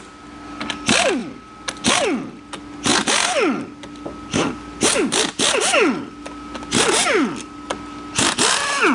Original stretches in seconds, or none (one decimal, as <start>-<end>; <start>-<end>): 0.0-8.9